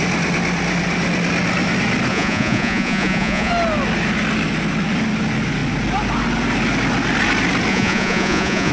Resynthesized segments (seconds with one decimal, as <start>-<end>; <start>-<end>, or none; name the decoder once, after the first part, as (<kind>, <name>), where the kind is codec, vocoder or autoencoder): 2.1-3.5 (vocoder, Vocos); 7.7-8.7